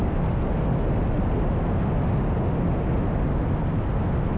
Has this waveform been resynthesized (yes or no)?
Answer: no